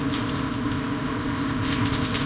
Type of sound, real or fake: fake